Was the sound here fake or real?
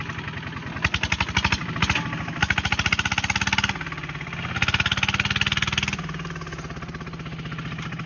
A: real